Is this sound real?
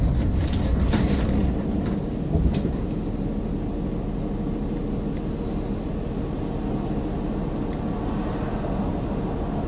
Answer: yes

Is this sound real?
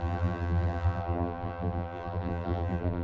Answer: no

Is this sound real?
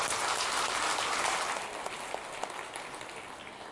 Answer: yes